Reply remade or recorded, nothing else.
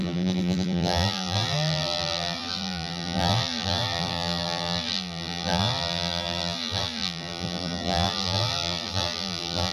remade